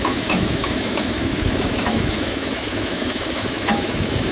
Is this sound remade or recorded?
remade